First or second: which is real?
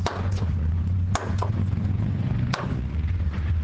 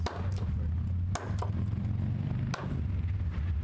second